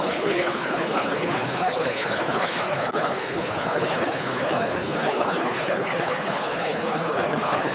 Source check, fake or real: fake